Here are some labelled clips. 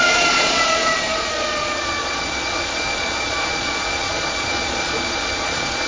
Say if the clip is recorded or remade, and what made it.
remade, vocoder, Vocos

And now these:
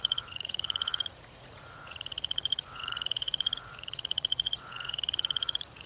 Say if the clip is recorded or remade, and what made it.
remade, vocoder, Vocos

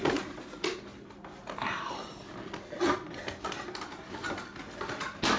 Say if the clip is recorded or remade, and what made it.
recorded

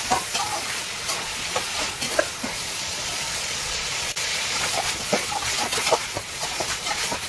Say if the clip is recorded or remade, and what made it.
remade, vocoder, Vocos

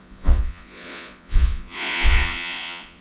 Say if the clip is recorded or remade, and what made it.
remade, vocoder, Vocos